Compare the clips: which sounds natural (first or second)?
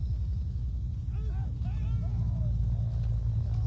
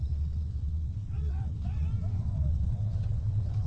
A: first